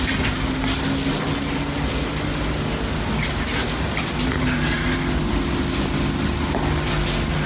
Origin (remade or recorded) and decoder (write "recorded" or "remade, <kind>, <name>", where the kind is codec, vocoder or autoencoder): recorded